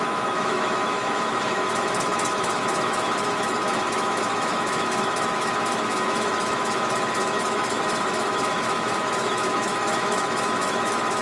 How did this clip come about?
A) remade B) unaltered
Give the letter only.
A